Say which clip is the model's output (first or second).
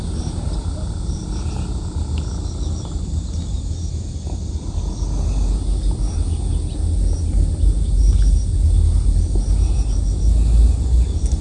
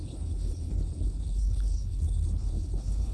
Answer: second